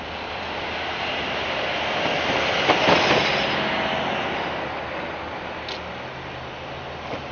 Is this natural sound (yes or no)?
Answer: yes